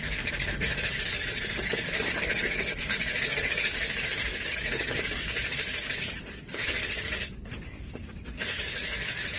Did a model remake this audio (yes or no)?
yes